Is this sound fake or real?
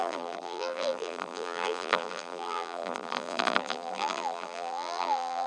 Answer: fake